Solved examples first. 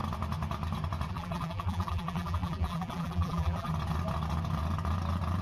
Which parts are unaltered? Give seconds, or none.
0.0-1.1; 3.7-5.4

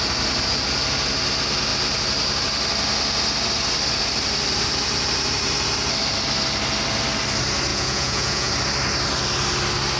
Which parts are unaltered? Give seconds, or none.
0.0-7.7; 8.5-10.0

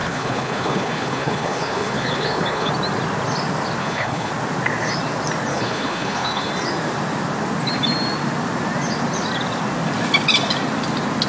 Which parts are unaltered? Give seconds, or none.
2.7-3.8; 4.3-5.5; 6.5-11.3

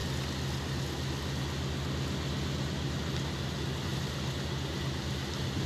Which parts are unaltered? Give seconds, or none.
0.0-5.7

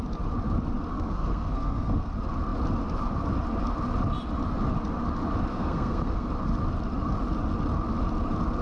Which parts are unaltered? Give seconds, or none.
0.0-0.9; 2.1-5.5; 6.3-8.6

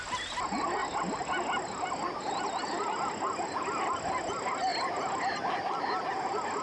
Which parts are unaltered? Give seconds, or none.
0.0-6.6

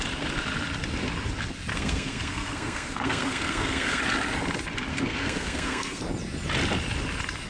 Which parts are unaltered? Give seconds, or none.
0.0-1.7; 4.0-4.9; 6.0-7.5